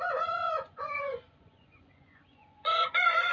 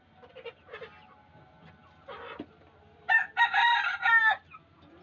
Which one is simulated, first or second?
first